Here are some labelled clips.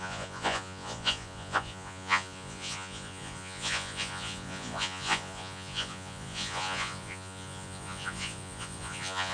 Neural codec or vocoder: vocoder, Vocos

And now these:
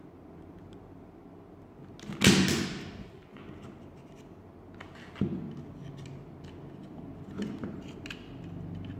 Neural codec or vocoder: none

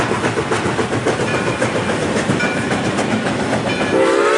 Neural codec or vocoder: none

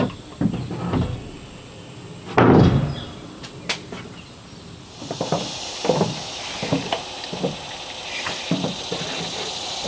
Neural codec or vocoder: none